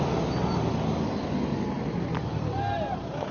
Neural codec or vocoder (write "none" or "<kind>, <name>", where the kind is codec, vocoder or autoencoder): none